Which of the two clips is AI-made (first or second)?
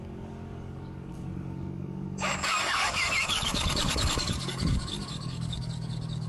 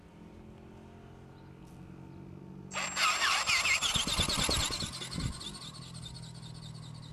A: first